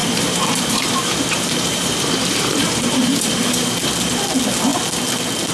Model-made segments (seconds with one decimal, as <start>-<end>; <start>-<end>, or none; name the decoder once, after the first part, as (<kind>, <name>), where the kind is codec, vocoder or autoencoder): 0.0-3.3 (vocoder, BigVGAN v2)